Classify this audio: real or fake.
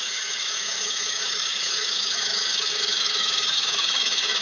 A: fake